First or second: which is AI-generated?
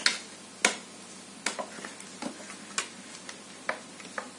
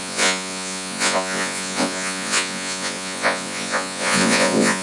second